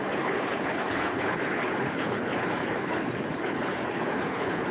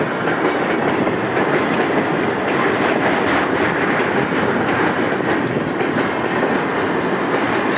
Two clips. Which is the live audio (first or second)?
second